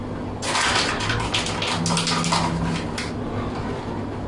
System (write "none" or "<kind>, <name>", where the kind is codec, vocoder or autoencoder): none